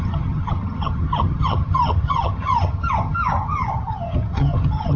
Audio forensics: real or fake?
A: fake